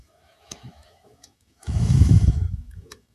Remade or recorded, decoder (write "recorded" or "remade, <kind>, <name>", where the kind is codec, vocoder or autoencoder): remade, autoencoder, DAC-VAE